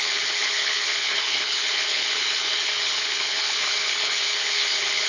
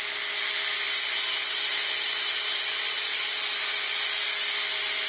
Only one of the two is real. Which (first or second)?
second